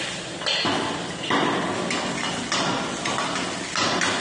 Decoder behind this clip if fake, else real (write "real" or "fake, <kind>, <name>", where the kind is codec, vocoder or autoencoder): real